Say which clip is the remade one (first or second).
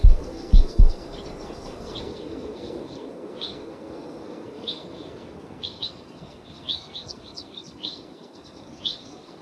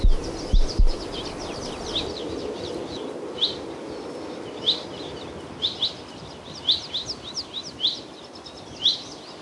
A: first